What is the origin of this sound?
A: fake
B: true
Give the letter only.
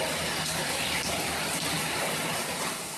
A